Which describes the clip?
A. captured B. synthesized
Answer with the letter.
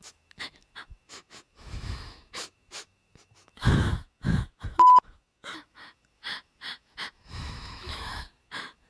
B